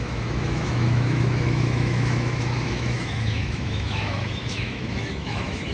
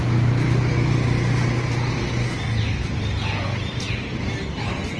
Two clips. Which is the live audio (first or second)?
second